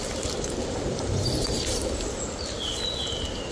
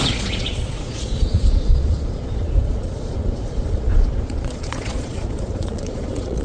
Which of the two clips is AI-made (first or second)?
second